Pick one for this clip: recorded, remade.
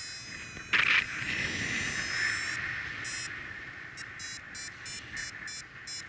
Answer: recorded